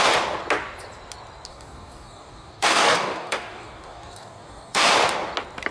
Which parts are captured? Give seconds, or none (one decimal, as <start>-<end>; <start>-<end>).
0.0-1.5; 4.9-5.7